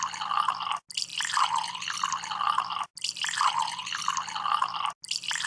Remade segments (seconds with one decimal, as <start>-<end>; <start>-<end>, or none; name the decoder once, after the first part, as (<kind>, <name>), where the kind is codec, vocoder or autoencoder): none